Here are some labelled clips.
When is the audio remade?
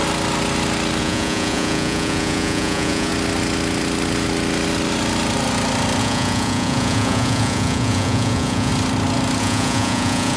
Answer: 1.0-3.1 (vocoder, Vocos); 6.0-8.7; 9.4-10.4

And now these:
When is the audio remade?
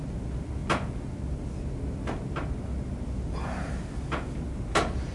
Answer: none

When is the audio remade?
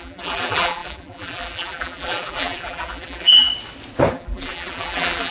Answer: 0.0-3.5 (vocoder, BigVGAN v2); 4.1-5.3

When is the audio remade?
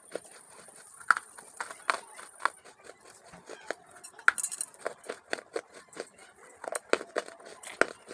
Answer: none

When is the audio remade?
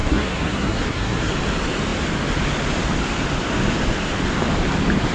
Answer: 0.0-1.3 (codec, SNAC)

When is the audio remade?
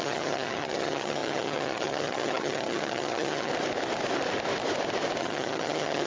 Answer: 0.0-3.5 (vocoder, HiFi-GAN); 5.2-6.1